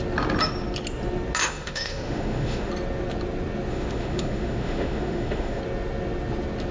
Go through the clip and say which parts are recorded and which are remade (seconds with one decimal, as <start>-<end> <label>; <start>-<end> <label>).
0.0-1.4 recorded; 1.4-2.7 remade; 2.7-3.7 recorded; 3.7-5.6 remade; 5.6-6.7 recorded